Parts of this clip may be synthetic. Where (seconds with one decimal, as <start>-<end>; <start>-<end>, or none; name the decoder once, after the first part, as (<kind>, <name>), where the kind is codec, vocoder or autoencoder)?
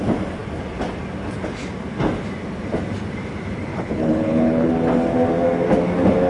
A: 3.7-4.7 (codec, HILCodec)